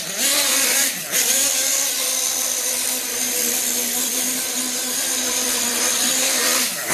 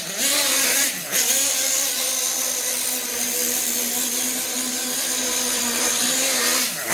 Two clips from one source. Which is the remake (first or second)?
first